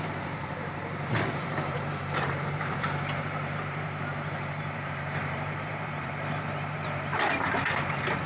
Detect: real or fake fake